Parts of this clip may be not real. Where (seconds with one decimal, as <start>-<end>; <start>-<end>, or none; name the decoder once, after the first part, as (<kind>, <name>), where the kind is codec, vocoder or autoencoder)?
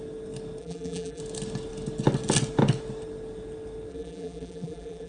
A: 0.6-1.2 (vocoder, BigVGAN v2); 3.9-5.1